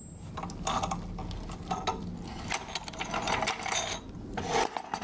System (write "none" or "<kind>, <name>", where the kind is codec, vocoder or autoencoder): none